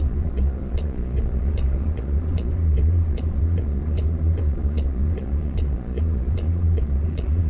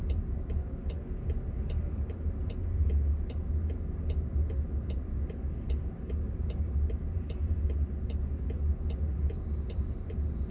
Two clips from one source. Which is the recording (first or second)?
second